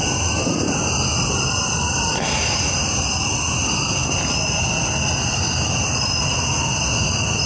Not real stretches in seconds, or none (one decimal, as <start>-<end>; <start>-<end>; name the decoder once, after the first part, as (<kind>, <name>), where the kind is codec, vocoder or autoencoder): none